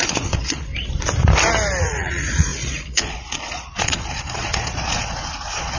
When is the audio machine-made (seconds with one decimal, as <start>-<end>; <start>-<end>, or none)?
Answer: 0.0-0.7; 1.8-5.8